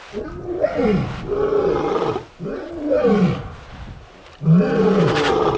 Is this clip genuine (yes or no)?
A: yes